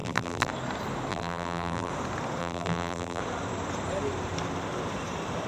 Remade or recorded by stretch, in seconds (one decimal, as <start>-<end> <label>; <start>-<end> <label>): 0.0-0.5 remade; 0.5-1.1 recorded; 1.1-1.9 remade; 1.9-2.4 recorded; 2.4-3.2 remade; 3.2-5.5 recorded